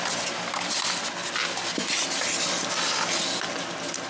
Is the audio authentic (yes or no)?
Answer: yes